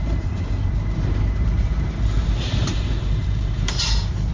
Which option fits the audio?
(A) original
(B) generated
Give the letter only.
B